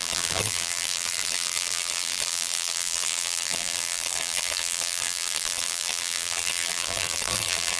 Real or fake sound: fake